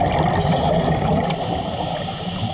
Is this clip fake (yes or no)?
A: no